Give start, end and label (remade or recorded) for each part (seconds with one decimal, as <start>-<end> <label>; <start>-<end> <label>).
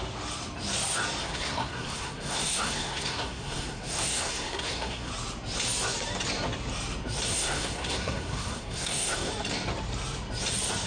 0.0-1.2 recorded; 1.2-5.1 remade; 5.1-7.3 recorded; 7.3-9.3 remade; 9.3-10.9 recorded